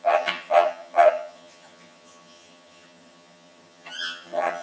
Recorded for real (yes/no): no